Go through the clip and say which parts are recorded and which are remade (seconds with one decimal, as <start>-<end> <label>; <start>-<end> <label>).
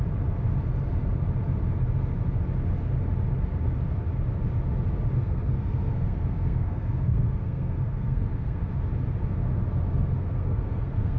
0.0-5.2 recorded; 5.2-8.6 remade; 8.6-10.4 recorded; 10.4-11.2 remade